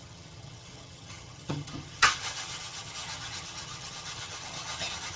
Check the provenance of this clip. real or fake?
fake